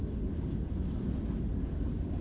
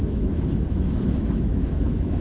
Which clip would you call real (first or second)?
first